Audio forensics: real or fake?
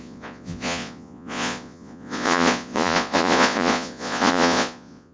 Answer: fake